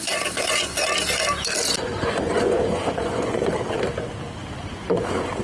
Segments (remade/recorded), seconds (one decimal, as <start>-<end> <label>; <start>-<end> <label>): 0.0-0.8 remade; 0.8-1.8 recorded; 1.8-3.5 remade; 3.5-4.6 recorded; 4.6-5.4 remade